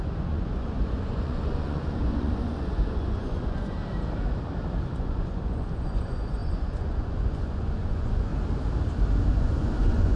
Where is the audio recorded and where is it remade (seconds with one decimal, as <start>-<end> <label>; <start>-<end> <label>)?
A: 0.0-3.8 remade; 3.8-4.9 recorded; 4.9-8.3 remade; 8.3-9.3 recorded; 9.3-10.2 remade